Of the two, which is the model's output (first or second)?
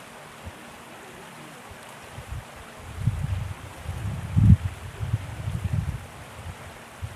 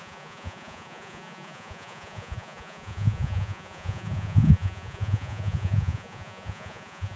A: second